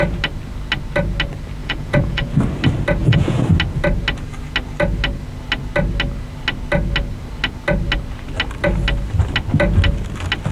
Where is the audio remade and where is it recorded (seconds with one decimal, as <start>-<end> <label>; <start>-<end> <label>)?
0.0-1.6 recorded; 1.6-2.3 remade; 2.3-3.0 recorded; 3.0-3.5 remade; 3.5-10.5 recorded